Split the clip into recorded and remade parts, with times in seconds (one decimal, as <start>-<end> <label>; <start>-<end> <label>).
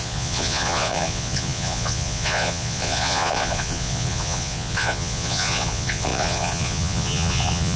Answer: 0.0-7.8 remade